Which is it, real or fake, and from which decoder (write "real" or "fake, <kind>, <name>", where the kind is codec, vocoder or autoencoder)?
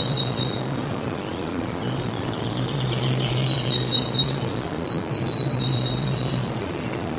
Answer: fake, vocoder, Vocos